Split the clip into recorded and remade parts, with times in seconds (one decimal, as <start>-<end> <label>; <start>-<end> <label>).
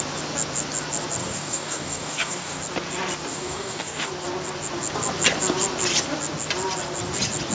0.0-1.2 recorded; 1.2-2.6 remade; 2.6-3.3 recorded; 3.3-4.1 remade; 4.1-7.5 recorded